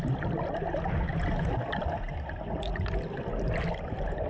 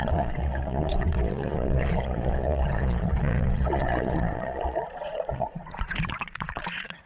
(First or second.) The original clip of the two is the first